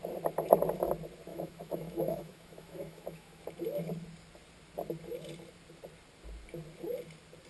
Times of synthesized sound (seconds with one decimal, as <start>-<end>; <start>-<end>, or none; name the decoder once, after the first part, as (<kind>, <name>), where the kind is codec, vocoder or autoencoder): 1.3-3.4 (autoencoder, DAC-VAE)